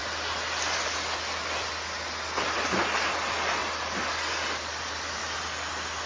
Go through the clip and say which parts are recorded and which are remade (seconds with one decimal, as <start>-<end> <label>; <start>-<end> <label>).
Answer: 0.0-6.1 recorded